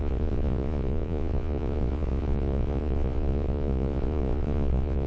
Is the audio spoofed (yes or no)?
yes